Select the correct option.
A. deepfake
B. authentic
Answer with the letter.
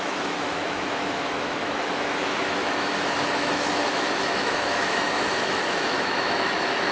A